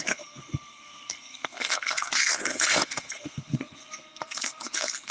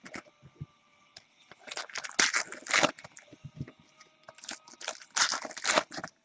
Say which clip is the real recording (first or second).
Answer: second